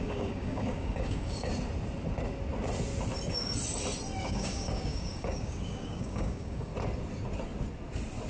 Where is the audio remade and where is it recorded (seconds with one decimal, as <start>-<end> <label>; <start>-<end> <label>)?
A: 0.0-1.5 remade; 1.5-4.2 recorded; 4.2-6.7 remade; 6.7-8.3 recorded